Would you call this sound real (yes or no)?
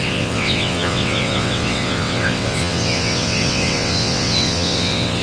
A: no